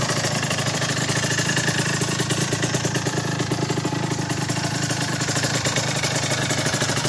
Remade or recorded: remade